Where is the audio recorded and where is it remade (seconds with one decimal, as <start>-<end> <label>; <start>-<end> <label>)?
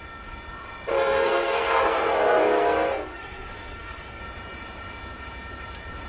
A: 0.0-0.9 recorded; 0.9-4.2 remade; 4.2-6.1 recorded